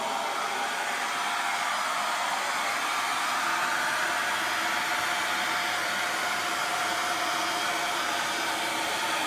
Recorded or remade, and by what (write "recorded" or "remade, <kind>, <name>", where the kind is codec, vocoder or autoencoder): recorded